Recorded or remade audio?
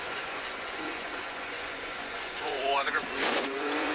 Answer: remade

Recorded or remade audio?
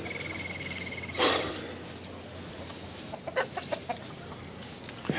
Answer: recorded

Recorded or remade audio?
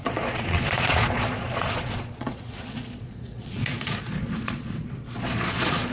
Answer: remade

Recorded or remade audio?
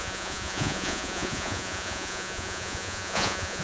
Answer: remade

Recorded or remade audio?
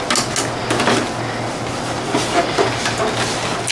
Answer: recorded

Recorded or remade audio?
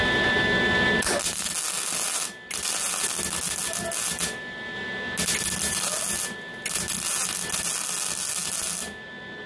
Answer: recorded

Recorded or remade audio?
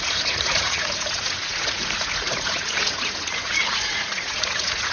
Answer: remade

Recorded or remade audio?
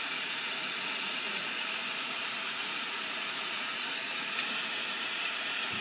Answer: remade